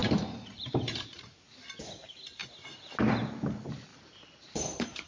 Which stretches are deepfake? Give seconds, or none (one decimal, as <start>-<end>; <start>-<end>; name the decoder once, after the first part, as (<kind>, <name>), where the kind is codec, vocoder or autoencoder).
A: 0.0-1.6 (vocoder, BigVGAN v2); 3.9-5.1

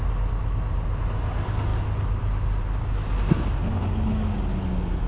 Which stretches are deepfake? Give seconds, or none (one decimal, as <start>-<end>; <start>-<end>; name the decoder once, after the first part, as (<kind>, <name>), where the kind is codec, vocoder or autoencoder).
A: none

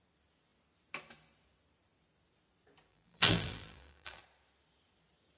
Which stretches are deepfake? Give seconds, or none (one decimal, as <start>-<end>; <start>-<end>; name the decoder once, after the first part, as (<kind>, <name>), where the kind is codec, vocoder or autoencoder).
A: 2.9-4.2 (vocoder, BigVGAN v2)

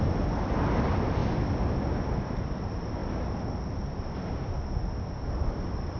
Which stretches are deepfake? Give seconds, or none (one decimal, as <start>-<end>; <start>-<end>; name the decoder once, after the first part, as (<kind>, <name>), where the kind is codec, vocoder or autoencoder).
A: none

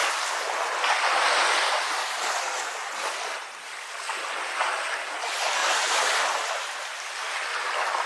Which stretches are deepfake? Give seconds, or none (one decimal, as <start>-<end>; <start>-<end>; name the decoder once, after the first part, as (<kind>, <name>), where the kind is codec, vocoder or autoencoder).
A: 5.6-7.1 (vocoder, BigVGAN v2)

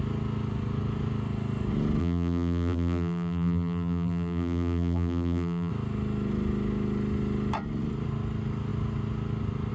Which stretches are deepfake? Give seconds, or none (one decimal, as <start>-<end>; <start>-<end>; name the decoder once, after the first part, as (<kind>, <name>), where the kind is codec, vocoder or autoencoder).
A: 2.0-5.7 (vocoder, BigVGAN v2)